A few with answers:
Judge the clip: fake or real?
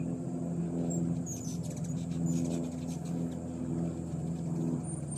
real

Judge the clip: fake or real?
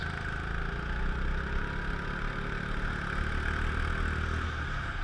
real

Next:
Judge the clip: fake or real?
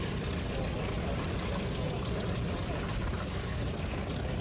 real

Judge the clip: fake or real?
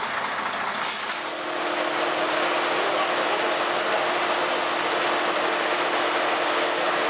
real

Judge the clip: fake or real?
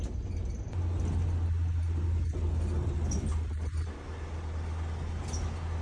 real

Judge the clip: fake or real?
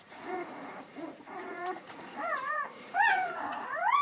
fake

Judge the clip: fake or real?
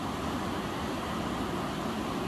real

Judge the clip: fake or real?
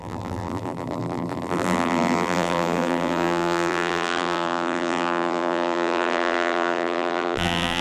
fake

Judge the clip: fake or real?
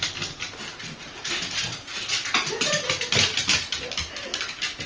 real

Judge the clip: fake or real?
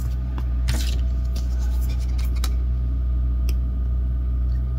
real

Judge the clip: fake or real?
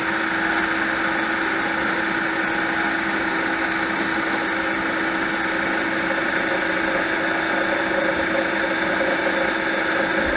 real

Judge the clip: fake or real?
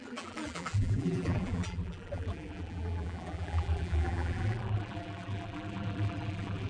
fake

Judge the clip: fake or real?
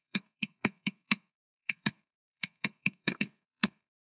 fake